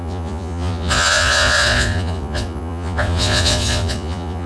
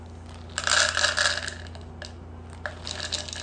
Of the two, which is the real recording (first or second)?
second